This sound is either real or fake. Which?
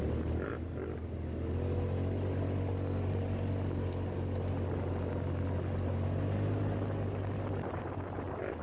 real